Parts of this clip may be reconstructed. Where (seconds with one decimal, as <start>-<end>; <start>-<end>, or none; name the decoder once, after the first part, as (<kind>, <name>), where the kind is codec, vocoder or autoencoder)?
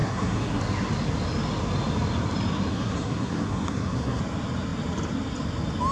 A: 0.0-0.6 (codec, SNAC); 2.7-4.2